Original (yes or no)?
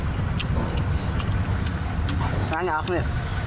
yes